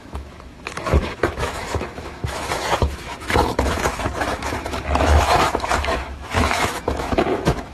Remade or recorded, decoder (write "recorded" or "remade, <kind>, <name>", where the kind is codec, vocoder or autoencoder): remade, autoencoder, DAC-VAE